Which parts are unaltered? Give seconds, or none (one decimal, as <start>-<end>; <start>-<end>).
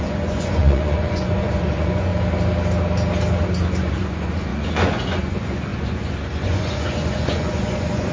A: 2.1-3.8